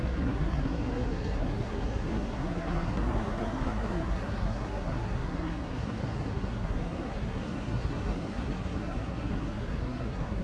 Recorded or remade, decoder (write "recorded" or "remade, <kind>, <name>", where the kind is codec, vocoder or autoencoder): remade, codec, SNAC